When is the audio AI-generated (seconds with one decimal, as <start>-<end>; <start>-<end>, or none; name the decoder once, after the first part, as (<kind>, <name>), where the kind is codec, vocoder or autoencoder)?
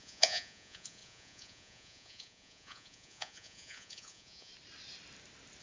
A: 0.0-4.5 (vocoder, Vocos)